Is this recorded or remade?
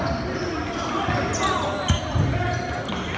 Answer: recorded